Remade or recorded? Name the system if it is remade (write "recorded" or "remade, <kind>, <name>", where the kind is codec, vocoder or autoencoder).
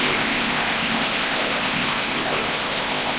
remade, codec, ZipCodec